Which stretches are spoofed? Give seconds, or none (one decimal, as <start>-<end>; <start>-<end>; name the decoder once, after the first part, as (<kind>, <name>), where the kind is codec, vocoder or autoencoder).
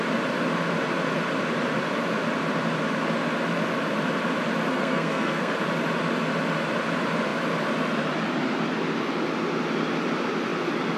4.7-5.5 (codec, SNAC)